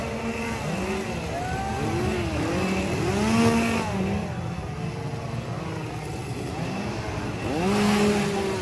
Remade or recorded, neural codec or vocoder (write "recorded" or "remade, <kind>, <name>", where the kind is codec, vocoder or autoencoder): recorded